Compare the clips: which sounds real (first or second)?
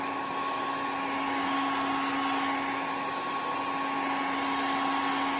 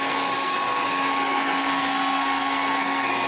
first